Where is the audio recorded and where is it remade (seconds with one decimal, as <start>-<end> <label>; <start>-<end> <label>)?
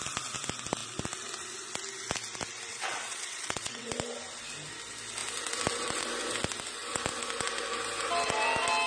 0.0-2.7 recorded; 2.7-3.9 remade; 3.9-8.9 recorded